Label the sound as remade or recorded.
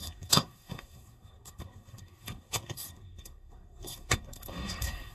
remade